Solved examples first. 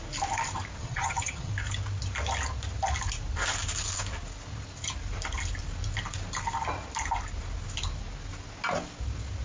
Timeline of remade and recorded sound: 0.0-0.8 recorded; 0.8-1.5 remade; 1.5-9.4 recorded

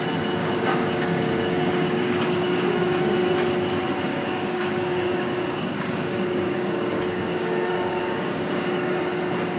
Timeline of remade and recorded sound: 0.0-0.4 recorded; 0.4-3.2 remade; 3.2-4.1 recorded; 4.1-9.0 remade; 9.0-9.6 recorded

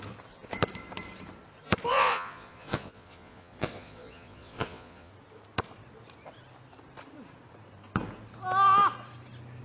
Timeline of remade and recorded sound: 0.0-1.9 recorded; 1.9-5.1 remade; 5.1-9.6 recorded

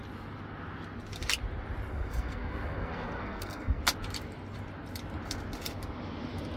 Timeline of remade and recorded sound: 0.0-1.9 recorded; 1.9-3.8 remade; 3.8-6.6 recorded

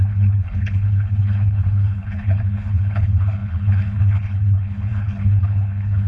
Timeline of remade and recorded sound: 0.0-6.1 remade

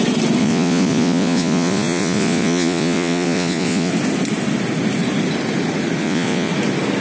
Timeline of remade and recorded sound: 0.0-0.4 recorded; 0.4-3.9 remade; 3.9-6.0 recorded; 6.0-6.5 remade; 6.5-7.0 recorded

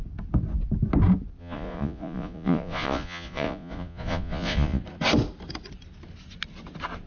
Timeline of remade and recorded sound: 0.0-1.4 recorded; 1.4-4.8 remade; 4.8-7.1 recorded